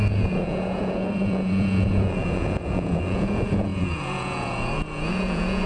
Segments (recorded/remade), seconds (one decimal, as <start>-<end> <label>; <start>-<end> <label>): 0.0-5.7 remade